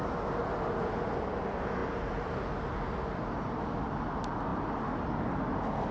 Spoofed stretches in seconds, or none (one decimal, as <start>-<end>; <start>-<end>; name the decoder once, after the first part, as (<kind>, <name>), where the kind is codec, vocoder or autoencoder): none